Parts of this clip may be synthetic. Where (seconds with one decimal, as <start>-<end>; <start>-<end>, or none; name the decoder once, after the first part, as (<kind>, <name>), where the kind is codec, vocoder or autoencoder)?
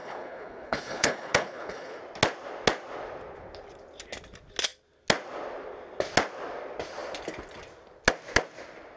0.0-2.0 (codec, HILCodec)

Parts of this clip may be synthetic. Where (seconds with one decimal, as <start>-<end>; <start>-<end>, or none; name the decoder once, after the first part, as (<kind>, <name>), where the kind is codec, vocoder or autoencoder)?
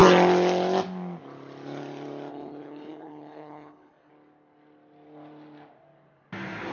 2.3-4.1 (codec, HILCodec)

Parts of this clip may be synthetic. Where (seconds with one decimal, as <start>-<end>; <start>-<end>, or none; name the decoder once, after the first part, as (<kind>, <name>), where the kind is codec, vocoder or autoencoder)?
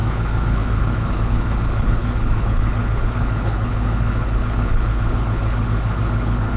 0.0-6.6 (codec, HILCodec)